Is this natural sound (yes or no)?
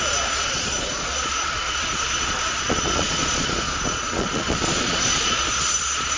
no